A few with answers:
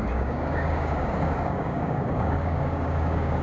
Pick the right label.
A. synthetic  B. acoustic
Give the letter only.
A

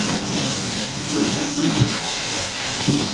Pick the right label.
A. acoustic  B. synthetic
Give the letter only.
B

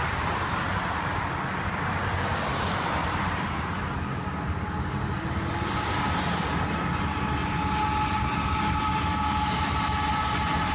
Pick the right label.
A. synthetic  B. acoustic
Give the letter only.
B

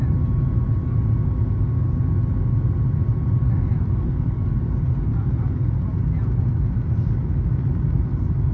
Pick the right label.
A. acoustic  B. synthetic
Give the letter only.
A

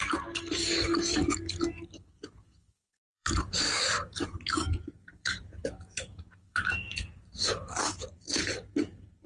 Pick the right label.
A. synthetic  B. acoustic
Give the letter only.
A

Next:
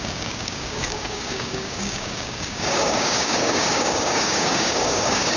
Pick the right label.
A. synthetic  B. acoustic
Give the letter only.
A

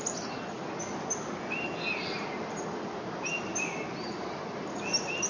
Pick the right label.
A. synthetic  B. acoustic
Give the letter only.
B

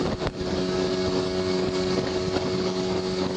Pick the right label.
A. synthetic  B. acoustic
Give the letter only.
A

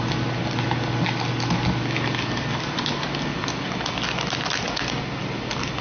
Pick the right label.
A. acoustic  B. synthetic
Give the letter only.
A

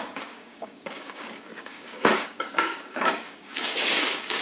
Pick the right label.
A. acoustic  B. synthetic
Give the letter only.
B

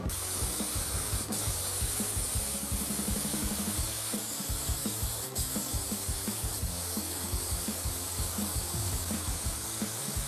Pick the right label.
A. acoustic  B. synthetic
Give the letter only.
B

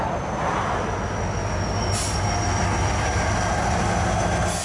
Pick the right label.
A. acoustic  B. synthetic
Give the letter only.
A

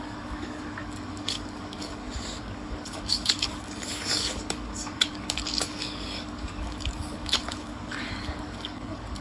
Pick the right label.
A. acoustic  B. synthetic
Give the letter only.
B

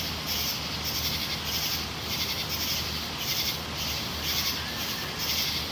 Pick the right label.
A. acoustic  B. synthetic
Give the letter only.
A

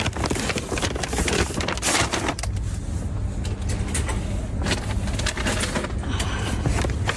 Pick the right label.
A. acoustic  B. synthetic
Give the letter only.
A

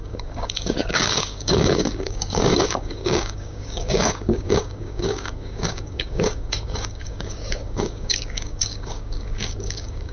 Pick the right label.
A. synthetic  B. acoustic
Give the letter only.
A